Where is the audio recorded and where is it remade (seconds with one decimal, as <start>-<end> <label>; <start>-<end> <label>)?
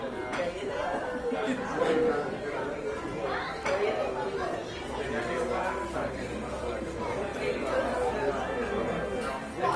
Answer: 0.0-9.8 recorded